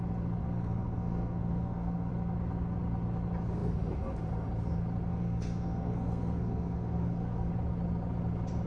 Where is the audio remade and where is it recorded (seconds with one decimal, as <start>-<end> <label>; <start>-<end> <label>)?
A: 0.0-0.4 recorded; 0.4-2.1 remade; 2.1-5.1 recorded; 5.1-7.5 remade; 7.5-8.7 recorded